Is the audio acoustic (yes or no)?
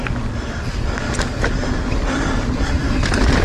yes